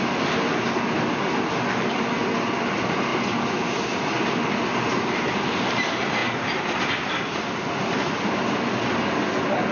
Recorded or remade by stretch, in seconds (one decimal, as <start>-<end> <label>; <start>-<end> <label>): 0.0-9.7 recorded